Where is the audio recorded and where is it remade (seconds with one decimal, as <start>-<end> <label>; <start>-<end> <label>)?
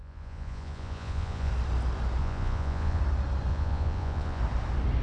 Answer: 0.0-1.5 remade; 1.5-2.2 recorded; 2.2-3.0 remade; 3.0-3.5 recorded; 3.5-4.4 remade; 4.4-5.0 recorded